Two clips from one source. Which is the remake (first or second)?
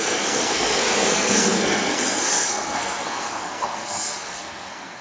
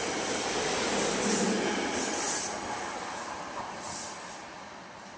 first